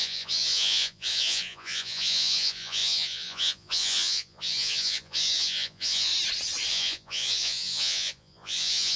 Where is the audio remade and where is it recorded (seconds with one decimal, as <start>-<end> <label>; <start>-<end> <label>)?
0.0-6.1 remade; 6.1-6.7 recorded; 6.7-9.0 remade